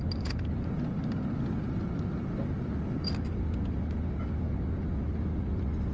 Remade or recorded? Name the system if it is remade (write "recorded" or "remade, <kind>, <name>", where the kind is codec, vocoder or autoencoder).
recorded